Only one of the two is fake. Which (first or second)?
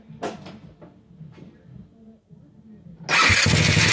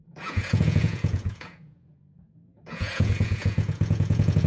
second